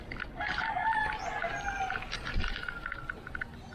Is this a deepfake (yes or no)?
no